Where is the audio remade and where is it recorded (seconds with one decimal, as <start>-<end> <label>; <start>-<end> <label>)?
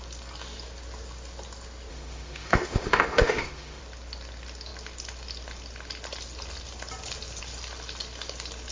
0.0-1.9 recorded; 1.9-3.8 remade; 3.8-8.7 recorded